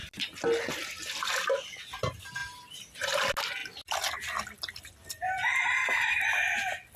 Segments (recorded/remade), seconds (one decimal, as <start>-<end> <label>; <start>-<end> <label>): 0.0-2.4 recorded; 2.4-3.2 remade; 3.2-7.0 recorded